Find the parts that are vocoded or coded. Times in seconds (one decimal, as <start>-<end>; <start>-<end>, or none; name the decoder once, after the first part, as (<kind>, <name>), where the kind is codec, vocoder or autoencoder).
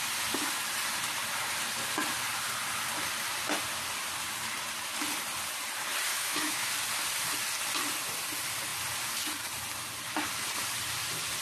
6.1-6.7 (autoencoder, DAC-VAE)